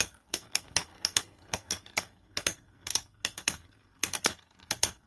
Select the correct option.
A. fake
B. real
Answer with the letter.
A